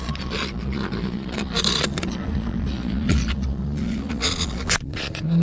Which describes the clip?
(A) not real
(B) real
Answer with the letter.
A